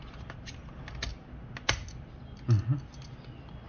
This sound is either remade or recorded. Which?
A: recorded